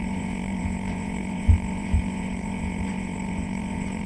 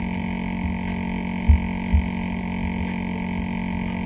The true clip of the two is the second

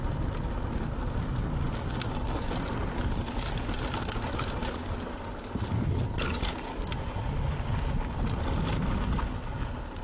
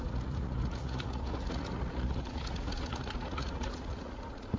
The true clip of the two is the first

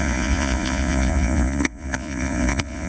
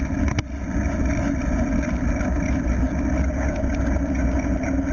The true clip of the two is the second